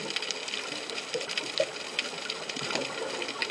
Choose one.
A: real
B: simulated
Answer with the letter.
A